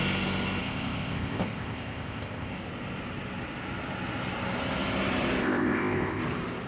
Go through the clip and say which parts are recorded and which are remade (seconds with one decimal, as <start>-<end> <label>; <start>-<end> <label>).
0.0-0.6 recorded; 0.6-2.5 remade; 2.5-5.4 recorded; 5.4-6.2 remade; 6.2-6.7 recorded